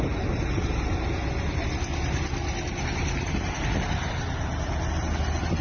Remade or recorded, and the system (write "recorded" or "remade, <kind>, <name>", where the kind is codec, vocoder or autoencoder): recorded